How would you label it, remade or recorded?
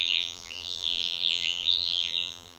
remade